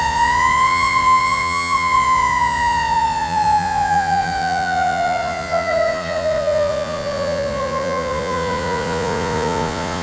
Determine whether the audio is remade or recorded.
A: remade